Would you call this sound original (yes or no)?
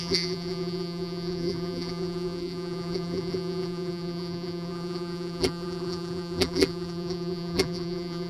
no